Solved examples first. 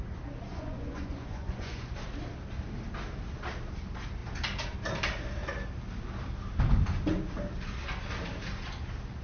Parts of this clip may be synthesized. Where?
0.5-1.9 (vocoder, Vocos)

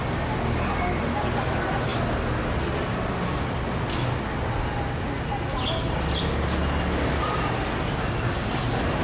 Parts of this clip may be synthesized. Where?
none

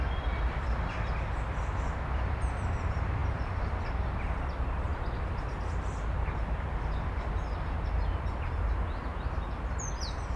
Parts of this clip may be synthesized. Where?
none

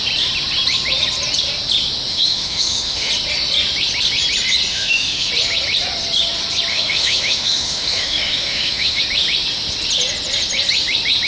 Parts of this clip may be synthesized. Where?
2.1-3.1 (autoencoder, DAC-VAE); 4.7-5.3; 6.7-9.0

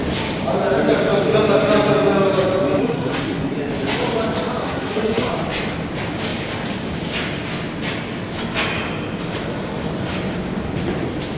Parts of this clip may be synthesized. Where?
2.8-3.5 (codec, SNAC); 4.6-5.3

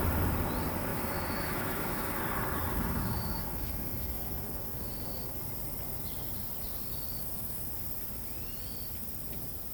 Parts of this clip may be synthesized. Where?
0.9-2.2 (autoencoder, DAC-VAE); 2.7-5.4; 7.2-7.7

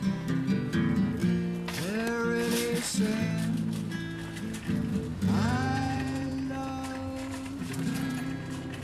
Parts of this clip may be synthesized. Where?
5.1-6.3 (vocoder, Vocos); 7.6-8.2